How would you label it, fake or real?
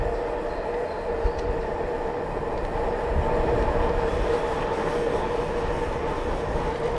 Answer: real